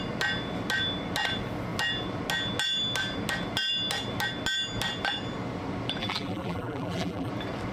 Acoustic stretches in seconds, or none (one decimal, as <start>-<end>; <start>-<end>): 0.0-6.0; 7.3-7.7